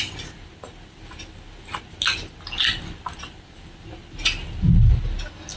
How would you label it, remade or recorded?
recorded